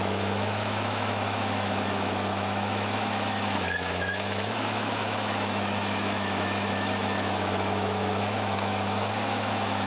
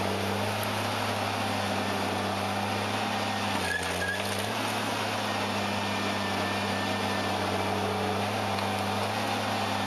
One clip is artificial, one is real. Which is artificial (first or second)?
first